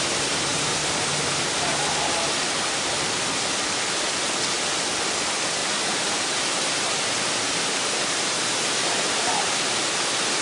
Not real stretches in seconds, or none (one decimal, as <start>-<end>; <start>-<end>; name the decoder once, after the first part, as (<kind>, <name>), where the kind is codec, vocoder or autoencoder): 0.5-1.4 (vocoder, BigVGAN v2); 5.6-9.5